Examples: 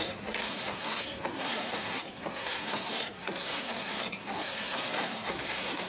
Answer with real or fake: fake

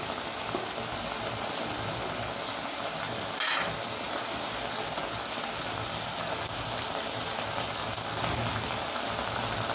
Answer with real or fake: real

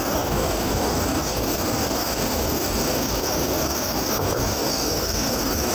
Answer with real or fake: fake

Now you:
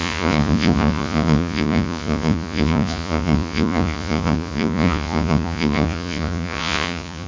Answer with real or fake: fake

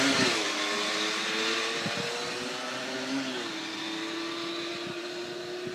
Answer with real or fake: real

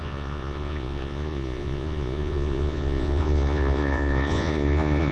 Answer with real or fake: fake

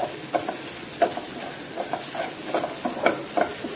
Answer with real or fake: real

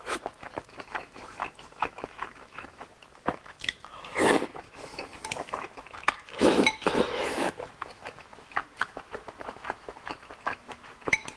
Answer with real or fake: fake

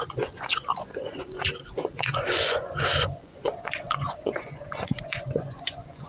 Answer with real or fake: fake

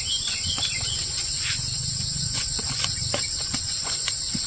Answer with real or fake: fake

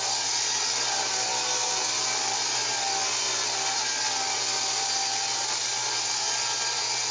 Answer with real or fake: real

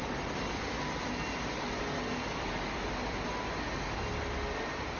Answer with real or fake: real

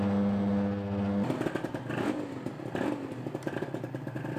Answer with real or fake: real